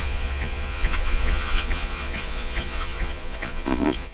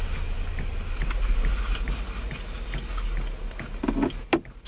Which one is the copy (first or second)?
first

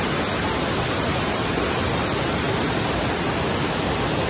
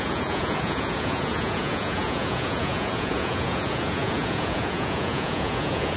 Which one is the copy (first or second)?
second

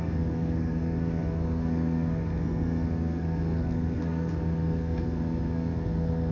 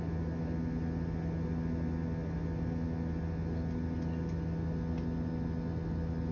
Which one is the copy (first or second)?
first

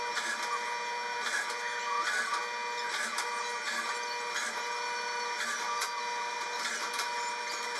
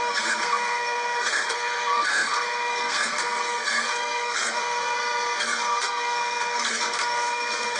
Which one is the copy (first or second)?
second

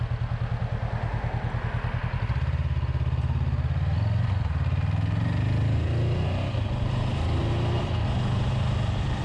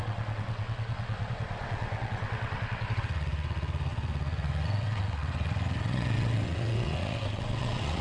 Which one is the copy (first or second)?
second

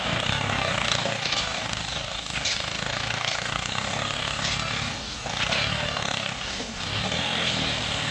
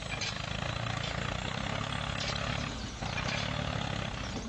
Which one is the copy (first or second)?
first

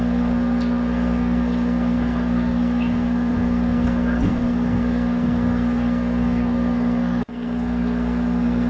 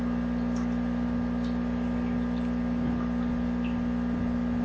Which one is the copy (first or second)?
first